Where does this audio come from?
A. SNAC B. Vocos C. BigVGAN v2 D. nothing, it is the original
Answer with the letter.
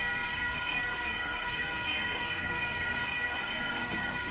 A